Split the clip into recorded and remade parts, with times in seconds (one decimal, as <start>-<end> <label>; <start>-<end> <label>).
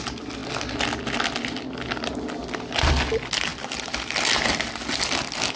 0.0-5.6 recorded